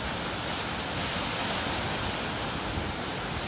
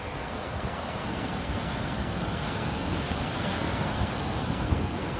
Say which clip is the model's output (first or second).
second